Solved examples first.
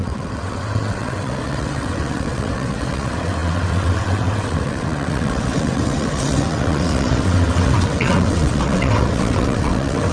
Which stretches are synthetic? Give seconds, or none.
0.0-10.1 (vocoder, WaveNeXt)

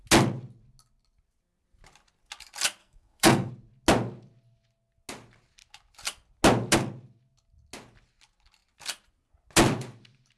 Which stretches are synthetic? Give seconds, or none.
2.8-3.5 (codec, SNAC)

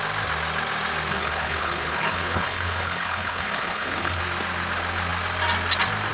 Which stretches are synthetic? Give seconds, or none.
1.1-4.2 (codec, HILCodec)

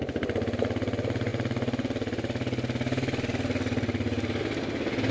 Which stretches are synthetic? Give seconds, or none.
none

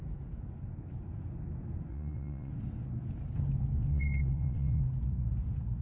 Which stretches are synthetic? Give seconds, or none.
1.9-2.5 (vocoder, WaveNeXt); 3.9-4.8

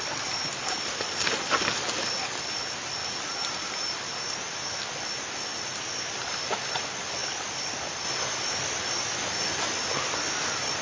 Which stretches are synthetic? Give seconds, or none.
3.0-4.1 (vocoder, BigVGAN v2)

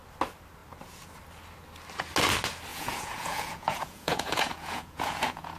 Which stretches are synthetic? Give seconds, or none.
2.7-5.6 (vocoder, Vocos)

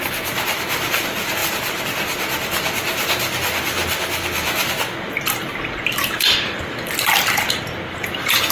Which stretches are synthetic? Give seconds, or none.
none